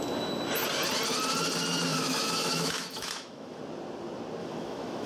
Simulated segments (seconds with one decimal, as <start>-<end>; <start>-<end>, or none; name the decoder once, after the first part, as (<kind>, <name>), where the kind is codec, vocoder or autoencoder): 1.9-3.6 (autoencoder, DAC-VAE); 4.4-5.1